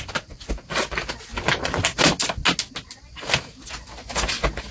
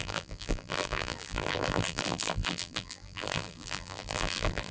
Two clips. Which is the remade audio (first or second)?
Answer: second